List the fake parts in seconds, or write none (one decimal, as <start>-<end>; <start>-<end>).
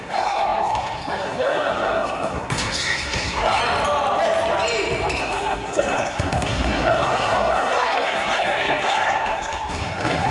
0.0-3.6; 5.2-10.3